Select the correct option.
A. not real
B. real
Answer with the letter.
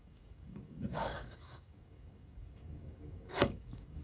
A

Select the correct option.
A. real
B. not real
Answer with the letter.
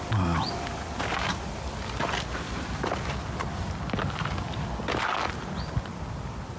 A